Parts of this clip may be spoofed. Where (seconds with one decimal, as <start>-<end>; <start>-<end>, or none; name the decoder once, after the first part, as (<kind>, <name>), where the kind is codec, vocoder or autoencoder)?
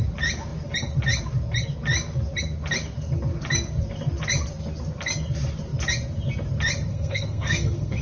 6.9-8.0 (codec, SNAC)